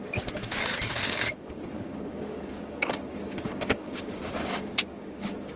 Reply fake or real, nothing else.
fake